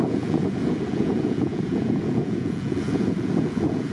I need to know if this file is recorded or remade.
remade